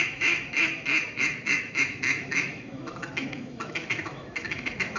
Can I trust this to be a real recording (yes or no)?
no